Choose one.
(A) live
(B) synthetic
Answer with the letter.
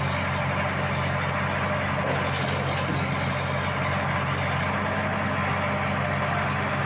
A